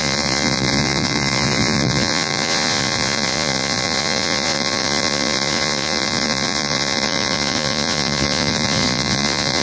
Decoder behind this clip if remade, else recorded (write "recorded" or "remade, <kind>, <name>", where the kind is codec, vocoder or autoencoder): remade, vocoder, Vocos